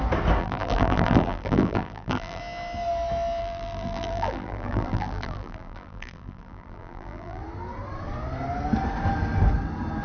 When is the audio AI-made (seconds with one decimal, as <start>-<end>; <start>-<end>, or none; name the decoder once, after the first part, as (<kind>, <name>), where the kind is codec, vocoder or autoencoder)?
0.4-2.4 (vocoder, BigVGAN v2); 3.4-7.4